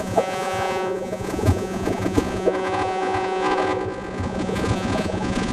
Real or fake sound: fake